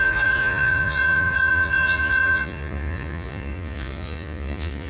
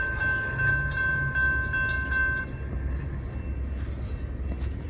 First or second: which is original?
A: second